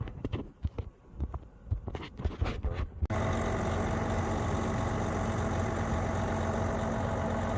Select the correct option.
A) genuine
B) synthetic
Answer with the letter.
A